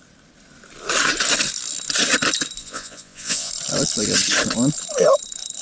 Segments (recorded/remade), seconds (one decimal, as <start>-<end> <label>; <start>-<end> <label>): 0.0-2.6 recorded; 2.6-3.5 remade; 3.5-5.6 recorded